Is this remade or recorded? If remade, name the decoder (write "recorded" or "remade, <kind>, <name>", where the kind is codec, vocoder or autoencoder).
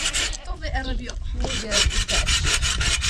remade, vocoder, BigVGAN v2